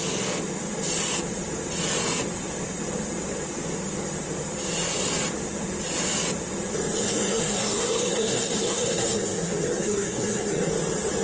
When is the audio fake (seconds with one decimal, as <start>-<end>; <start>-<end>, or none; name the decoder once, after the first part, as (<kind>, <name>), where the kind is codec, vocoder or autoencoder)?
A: 7.0-10.7 (codec, SNAC)